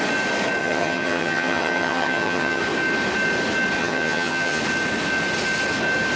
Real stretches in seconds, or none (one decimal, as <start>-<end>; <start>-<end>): 0.0-0.6; 2.6-3.8; 4.6-6.2